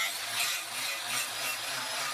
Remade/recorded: recorded